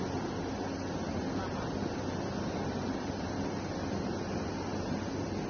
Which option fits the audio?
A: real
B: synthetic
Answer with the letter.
A